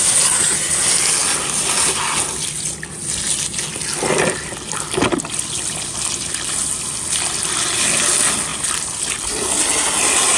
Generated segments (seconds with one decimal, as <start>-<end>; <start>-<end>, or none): 8.5-9.1

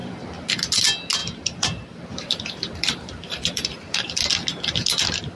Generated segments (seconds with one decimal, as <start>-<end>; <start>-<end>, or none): 0.0-0.5; 1.2-4.2